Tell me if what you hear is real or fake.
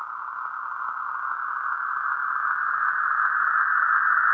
real